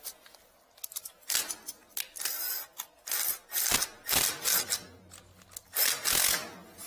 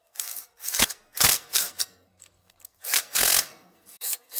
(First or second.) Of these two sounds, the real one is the first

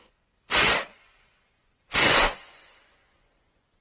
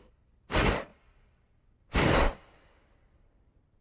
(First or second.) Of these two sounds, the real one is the second